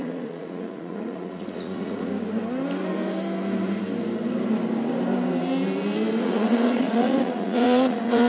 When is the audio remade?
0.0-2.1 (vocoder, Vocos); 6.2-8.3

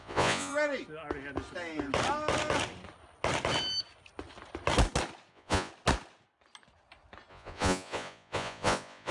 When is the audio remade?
0.0-0.5 (vocoder, Vocos); 5.3-5.7; 7.3-9.1

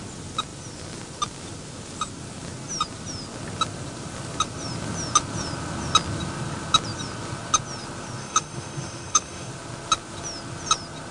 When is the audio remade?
8.2-9.5 (autoencoder, DAC-VAE)

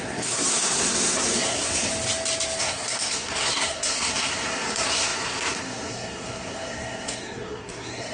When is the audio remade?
0.0-1.9 (codec, SNAC); 2.6-8.1